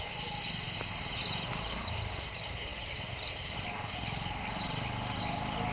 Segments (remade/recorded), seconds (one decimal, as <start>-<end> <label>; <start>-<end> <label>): 0.0-5.7 recorded